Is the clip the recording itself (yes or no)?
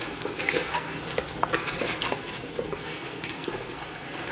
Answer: no